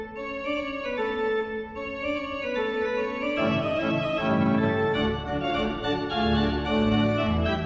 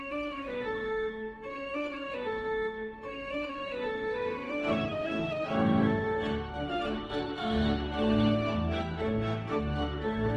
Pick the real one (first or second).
first